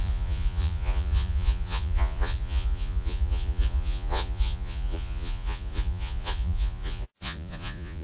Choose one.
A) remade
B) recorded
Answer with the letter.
A